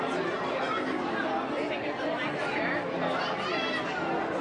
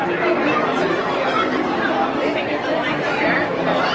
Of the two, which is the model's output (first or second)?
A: second